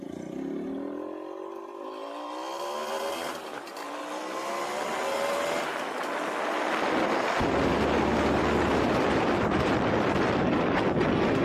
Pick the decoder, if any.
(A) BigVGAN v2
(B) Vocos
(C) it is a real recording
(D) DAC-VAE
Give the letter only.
C